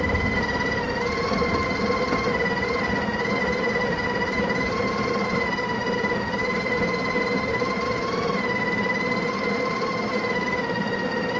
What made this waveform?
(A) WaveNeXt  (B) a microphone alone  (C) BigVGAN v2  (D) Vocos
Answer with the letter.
C